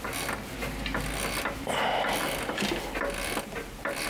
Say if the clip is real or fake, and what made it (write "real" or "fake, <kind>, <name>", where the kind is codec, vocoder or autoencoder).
real